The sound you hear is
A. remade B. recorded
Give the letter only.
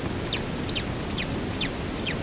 B